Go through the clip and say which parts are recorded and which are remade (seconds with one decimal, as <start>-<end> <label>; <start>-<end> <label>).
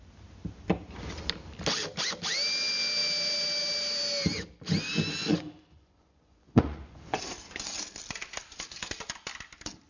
0.0-5.2 recorded; 5.2-7.3 remade; 7.3-9.9 recorded